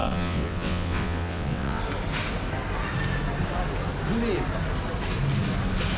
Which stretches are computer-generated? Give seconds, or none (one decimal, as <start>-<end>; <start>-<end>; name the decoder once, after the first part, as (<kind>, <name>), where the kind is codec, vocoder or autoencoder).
0.0-1.8 (vocoder, WaveNeXt)

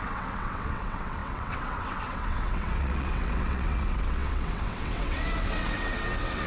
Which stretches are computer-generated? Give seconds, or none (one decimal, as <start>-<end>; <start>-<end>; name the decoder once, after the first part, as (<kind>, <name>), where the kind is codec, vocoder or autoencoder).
0.0-6.5 (vocoder, WaveNeXt)

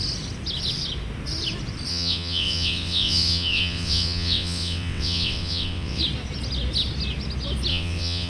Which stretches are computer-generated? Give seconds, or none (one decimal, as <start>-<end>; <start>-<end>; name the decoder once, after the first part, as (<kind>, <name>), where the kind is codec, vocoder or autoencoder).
1.9-6.0 (vocoder, WaveNeXt); 7.7-8.3